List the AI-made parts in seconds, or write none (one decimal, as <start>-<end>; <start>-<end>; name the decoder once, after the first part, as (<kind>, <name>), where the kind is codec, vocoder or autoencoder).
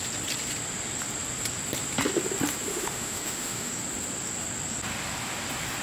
2.7-3.7 (autoencoder, DAC-VAE)